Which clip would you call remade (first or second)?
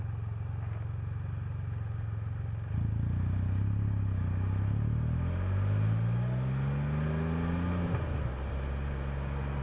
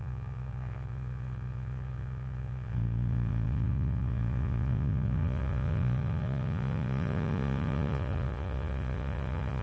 second